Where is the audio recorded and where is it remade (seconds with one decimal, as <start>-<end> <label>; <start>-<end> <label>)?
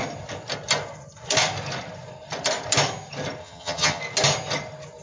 0.0-3.4 recorded; 3.4-4.0 remade; 4.0-5.0 recorded